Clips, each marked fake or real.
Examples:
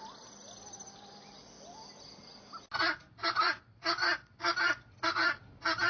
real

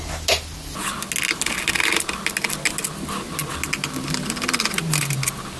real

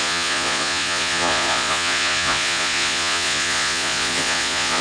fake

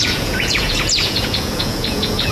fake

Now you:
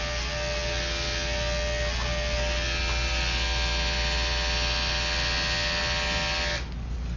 real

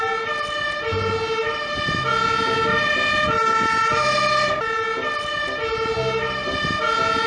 real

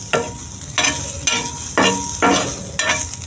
real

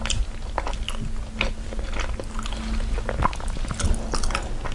real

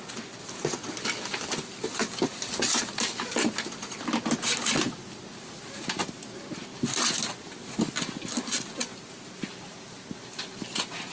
real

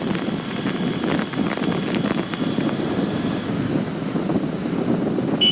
real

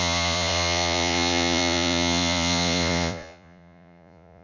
fake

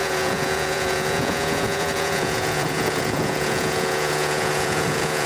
fake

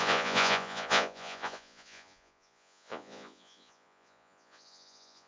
fake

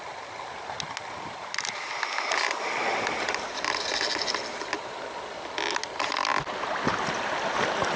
real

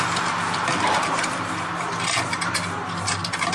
real